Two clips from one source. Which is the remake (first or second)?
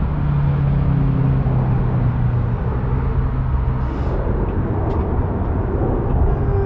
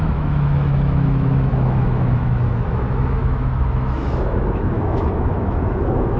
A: second